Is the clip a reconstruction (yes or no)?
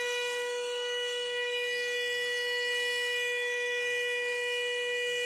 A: yes